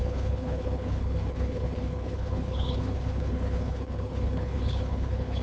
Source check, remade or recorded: remade